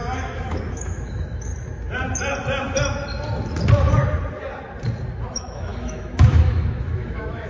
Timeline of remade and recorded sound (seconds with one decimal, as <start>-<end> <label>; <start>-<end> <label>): 0.0-1.5 remade; 1.5-5.1 recorded; 5.1-7.5 remade